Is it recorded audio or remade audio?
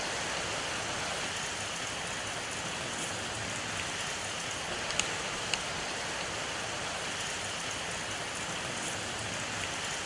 recorded